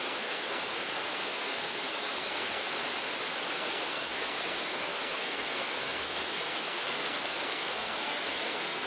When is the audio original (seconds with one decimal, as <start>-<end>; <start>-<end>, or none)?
2.8-3.5